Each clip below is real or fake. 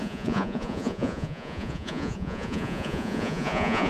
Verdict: fake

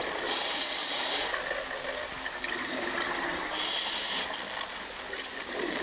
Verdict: real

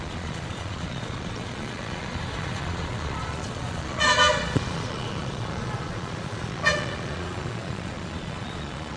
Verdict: fake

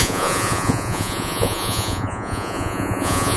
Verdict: fake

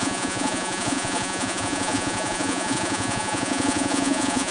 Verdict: fake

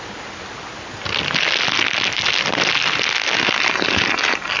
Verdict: real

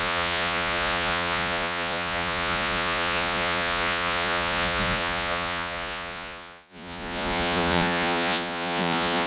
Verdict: fake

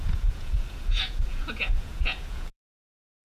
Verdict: fake